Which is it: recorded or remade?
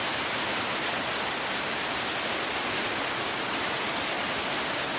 recorded